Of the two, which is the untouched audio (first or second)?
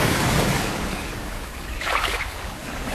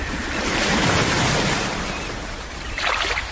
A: second